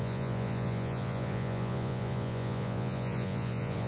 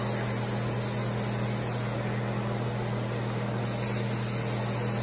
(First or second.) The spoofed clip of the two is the first